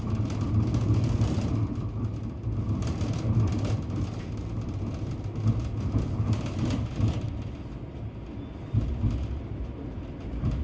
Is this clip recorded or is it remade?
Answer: recorded